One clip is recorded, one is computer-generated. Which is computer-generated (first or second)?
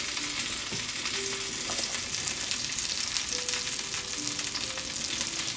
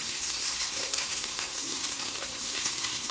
second